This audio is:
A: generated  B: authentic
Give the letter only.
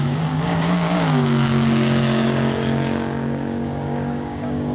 A